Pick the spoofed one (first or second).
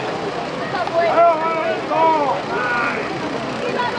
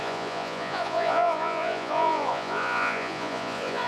second